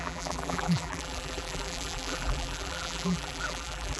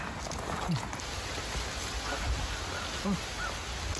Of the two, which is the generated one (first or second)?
first